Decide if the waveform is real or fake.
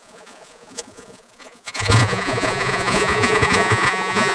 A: fake